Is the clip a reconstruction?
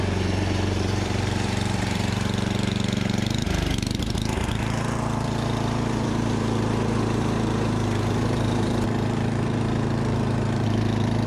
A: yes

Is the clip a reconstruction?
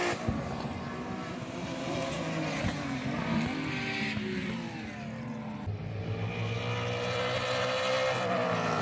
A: no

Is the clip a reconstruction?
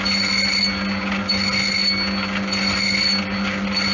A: no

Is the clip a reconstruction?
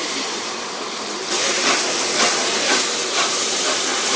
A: yes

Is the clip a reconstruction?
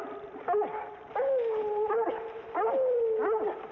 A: no